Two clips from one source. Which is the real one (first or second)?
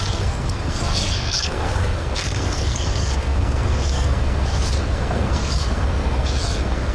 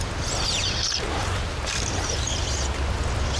second